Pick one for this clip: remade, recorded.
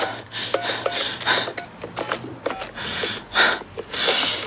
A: recorded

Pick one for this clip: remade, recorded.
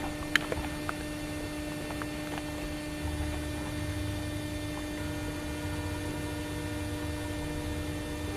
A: recorded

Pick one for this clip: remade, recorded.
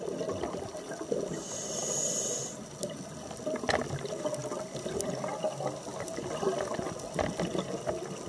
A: recorded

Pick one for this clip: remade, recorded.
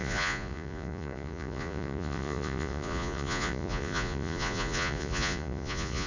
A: remade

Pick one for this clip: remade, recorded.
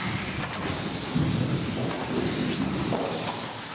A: recorded